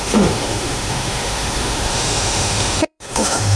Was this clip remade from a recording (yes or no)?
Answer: yes